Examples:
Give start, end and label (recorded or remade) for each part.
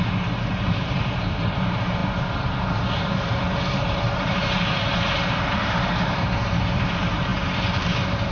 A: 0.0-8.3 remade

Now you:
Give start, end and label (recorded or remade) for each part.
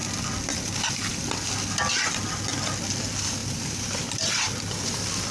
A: 0.0-3.4 recorded; 3.4-4.7 remade; 4.7-5.3 recorded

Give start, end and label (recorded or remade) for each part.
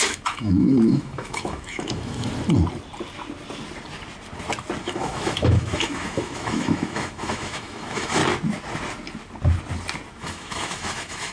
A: 0.0-2.3 remade; 2.3-4.8 recorded; 4.8-8.2 remade; 8.2-10.2 recorded; 10.2-11.3 remade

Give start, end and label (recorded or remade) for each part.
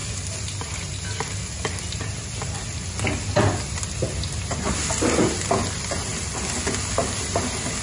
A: 0.0-7.8 recorded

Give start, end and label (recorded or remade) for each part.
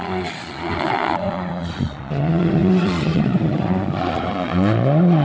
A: 0.0-5.2 remade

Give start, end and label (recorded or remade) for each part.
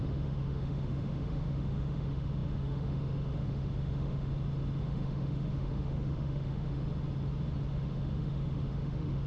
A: 0.0-4.3 remade; 4.3-4.8 recorded; 4.8-6.8 remade; 6.8-7.7 recorded; 7.7-9.3 remade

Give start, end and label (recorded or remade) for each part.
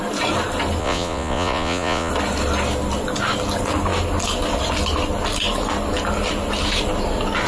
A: 0.0-0.8 recorded; 0.8-2.1 remade; 2.1-7.5 recorded